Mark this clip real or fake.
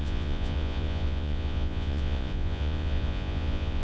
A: fake